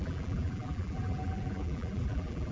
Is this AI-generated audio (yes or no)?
yes